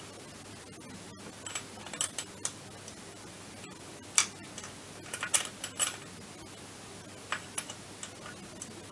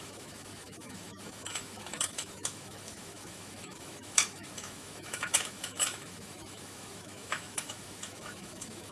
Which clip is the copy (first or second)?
second